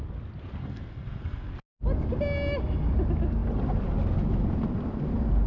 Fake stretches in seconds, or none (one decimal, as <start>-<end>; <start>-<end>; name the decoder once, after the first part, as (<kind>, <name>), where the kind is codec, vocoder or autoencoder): 0.6-1.5 (codec, SNAC)